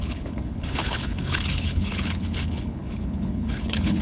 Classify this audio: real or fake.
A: fake